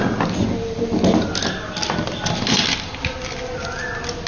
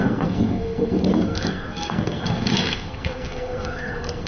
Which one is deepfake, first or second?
second